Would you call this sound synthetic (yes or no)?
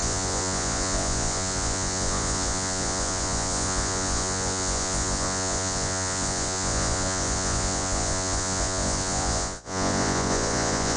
yes